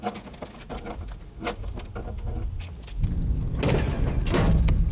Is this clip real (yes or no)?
yes